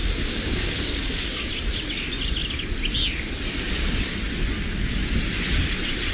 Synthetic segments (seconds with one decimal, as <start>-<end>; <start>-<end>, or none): 0.0-1.5